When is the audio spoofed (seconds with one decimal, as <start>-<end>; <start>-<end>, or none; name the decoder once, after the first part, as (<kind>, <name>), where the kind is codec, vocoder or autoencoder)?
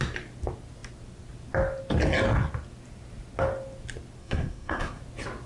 4.2-5.0 (codec, SNAC)